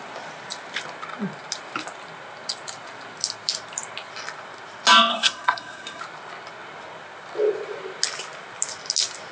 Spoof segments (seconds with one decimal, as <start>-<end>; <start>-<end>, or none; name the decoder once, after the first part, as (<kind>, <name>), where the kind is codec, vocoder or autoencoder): 5.1-6.0 (codec, SNAC)